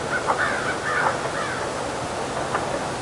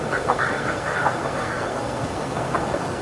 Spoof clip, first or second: second